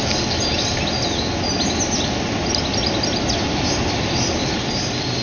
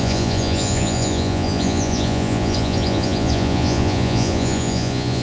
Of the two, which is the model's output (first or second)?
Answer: second